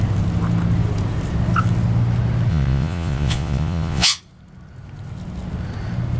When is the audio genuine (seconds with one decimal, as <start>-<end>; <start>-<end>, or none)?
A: 0.0-2.5; 4.2-6.2